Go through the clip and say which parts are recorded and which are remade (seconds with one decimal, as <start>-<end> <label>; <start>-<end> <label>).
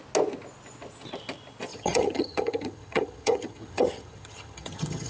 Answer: 0.0-1.7 recorded; 1.7-5.1 remade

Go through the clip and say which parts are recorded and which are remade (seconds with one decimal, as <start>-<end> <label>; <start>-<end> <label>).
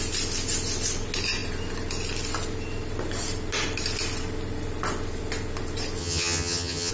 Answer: 0.0-6.0 recorded; 6.0-6.9 remade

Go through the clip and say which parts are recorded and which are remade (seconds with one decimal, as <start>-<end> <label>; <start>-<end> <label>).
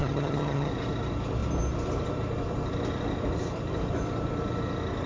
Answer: 0.0-0.7 remade; 0.7-5.1 recorded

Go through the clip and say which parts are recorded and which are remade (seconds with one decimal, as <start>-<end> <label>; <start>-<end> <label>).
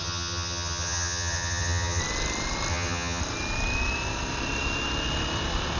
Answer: 0.0-2.0 remade; 2.0-2.7 recorded; 2.7-3.2 remade; 3.2-5.8 recorded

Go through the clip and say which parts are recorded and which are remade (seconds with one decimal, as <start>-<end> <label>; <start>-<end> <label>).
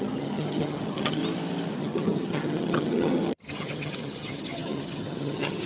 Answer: 0.0-1.2 remade; 1.2-1.8 recorded; 1.8-5.7 remade